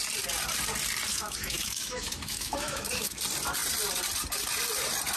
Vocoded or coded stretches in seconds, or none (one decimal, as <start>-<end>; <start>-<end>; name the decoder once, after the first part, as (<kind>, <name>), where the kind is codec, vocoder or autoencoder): 1.1-3.2 (autoencoder, DAC-VAE)